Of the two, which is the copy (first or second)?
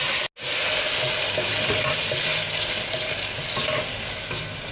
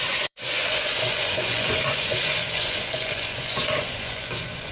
second